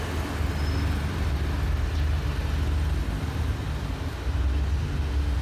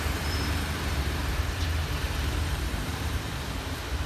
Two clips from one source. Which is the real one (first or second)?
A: first